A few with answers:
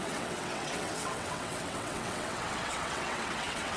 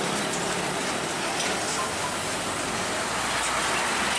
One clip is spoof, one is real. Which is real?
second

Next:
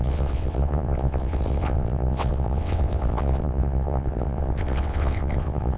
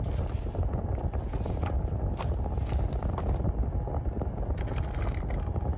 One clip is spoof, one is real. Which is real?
second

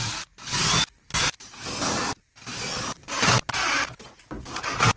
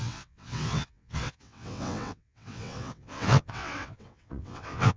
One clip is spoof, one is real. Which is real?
first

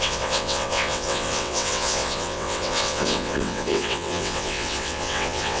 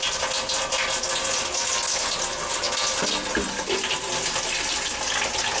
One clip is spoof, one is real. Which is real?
second